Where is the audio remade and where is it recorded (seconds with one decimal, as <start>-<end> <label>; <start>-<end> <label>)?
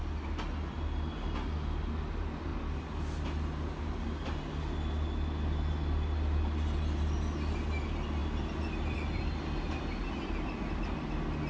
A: 0.0-11.5 recorded